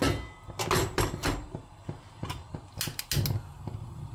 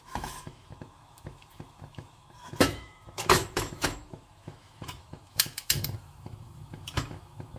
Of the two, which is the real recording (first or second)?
first